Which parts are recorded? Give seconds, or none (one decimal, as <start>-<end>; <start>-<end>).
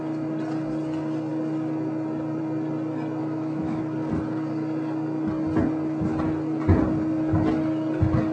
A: 0.0-3.2; 3.8-8.3